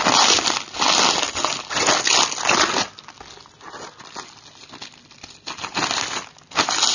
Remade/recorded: recorded